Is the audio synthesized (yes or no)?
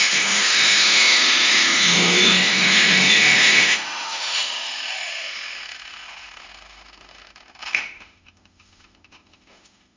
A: yes